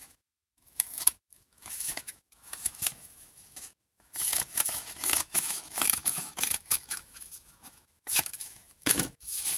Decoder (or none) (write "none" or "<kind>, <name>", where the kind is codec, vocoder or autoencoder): autoencoder, DAC-VAE